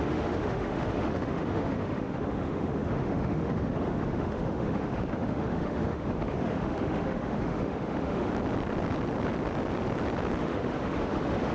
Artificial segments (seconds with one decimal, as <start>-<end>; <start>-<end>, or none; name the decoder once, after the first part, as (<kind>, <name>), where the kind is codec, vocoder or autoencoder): 0.0-8.3 (autoencoder, DAC-VAE); 10.4-11.5